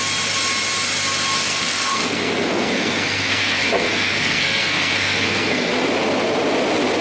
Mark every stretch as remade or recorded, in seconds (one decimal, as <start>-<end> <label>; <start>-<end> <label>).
0.0-1.5 recorded; 1.5-5.7 remade; 5.7-7.0 recorded